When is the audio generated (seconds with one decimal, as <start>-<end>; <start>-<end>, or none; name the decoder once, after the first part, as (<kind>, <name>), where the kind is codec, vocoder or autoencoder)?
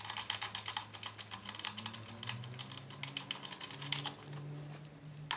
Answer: none